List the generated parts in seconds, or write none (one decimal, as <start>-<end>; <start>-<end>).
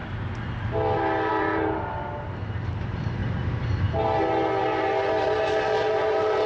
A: 1.3-6.5